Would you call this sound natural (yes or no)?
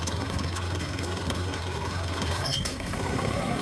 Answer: no